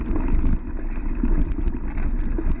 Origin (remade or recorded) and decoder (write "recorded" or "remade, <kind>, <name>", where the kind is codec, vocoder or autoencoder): recorded